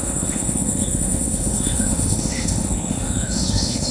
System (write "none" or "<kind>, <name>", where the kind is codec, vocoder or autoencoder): autoencoder, DAC-VAE